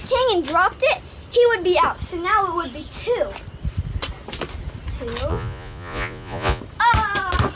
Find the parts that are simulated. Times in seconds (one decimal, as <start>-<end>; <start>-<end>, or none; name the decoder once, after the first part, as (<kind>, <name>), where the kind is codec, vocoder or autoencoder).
5.3-6.6 (vocoder, Vocos)